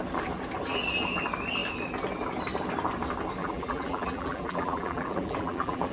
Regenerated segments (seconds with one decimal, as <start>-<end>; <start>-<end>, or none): 3.4-5.9